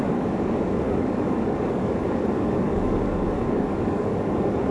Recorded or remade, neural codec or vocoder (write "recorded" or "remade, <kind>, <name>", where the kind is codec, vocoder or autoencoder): remade, codec, DAC